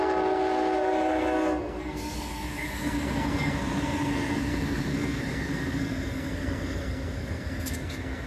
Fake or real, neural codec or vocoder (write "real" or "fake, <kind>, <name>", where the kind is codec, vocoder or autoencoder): fake, codec, SNAC